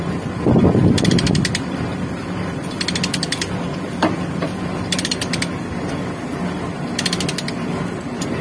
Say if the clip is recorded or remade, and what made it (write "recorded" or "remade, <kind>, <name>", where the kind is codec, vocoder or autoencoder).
recorded